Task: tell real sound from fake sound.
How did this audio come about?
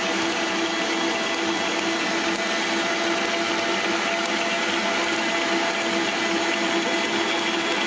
real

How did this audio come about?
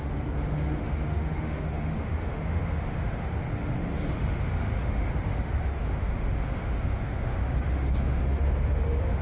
fake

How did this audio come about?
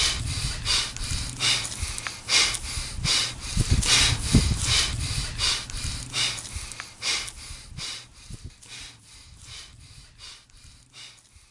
real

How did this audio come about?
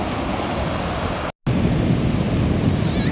real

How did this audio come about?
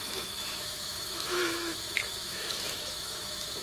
fake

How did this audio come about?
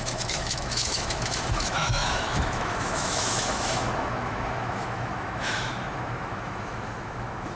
fake